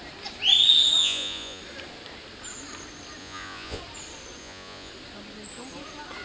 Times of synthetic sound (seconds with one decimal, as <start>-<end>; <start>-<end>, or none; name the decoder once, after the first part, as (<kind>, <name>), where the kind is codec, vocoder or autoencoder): 1.0-1.6 (vocoder, Vocos); 3.2-3.8; 4.4-4.9